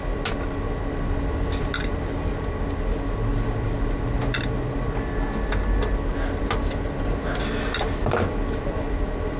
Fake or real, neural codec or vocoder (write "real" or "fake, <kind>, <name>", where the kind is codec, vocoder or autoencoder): real